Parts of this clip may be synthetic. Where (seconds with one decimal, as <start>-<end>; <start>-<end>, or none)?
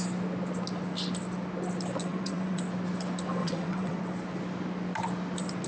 2.0-2.6; 3.4-4.0